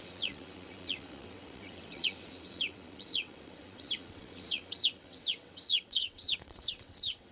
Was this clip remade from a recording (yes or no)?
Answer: yes